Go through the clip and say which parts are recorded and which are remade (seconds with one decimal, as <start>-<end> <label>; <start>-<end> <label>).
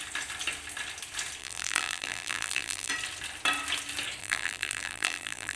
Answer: 0.0-1.4 recorded; 1.4-2.9 remade; 2.9-4.2 recorded; 4.2-5.6 remade